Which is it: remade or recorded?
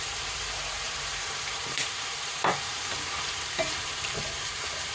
remade